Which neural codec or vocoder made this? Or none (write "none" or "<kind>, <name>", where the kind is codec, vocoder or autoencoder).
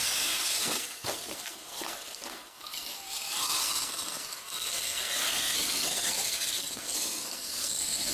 codec, SNAC